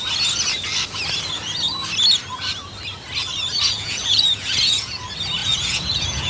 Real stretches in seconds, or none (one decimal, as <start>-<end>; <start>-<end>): 0.0-3.7; 5.0-5.4